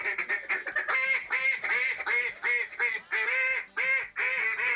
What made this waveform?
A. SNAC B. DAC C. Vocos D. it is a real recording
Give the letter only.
D